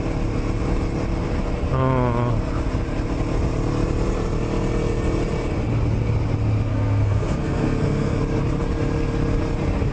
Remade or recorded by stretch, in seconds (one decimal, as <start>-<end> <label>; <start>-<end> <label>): 0.0-6.7 recorded; 6.7-8.2 remade; 8.2-9.9 recorded